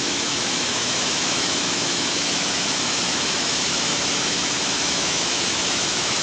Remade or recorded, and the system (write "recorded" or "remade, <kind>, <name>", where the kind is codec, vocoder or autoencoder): remade, autoencoder, DAC-VAE